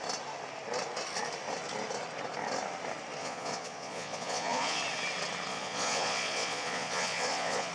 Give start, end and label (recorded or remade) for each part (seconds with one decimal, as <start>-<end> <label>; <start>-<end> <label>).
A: 0.0-3.2 recorded; 3.2-4.8 remade; 4.8-5.5 recorded; 5.5-7.7 remade